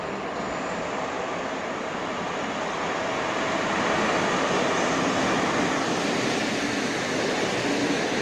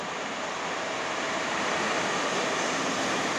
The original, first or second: first